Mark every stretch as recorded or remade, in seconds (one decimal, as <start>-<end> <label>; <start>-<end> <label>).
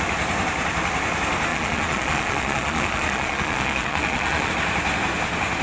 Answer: 0.0-1.5 recorded; 1.5-4.5 remade; 4.5-5.6 recorded